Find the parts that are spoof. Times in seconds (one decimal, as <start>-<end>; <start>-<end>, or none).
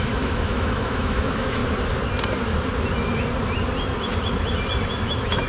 0.0-1.6; 4.9-5.5